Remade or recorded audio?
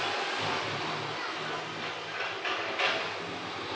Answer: recorded